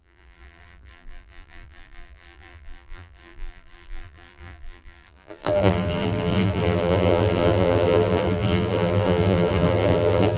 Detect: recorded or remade remade